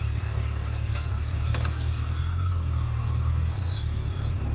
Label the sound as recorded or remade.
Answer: remade